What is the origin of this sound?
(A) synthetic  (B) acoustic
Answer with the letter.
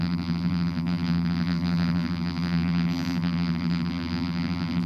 A